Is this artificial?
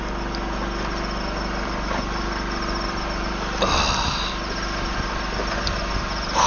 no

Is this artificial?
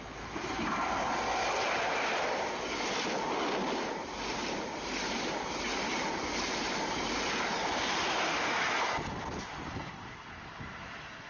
no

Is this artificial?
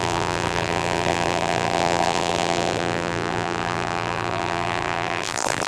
yes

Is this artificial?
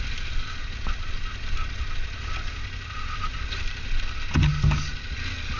no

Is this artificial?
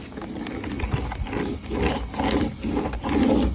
no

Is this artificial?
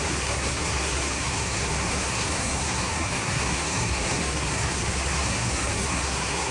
yes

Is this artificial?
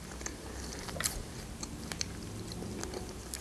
no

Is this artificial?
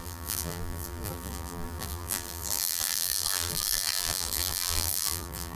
yes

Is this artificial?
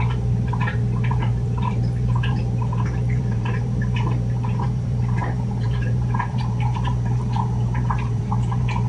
yes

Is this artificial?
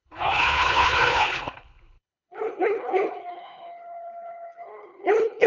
yes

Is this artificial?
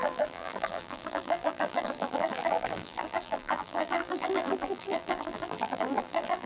yes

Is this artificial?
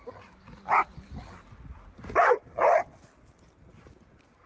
no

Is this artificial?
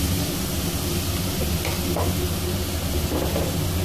no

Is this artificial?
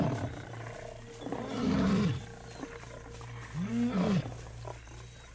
no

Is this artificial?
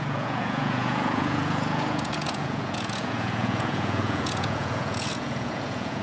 yes